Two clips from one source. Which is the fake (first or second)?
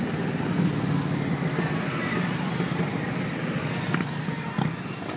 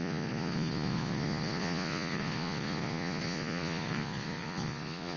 second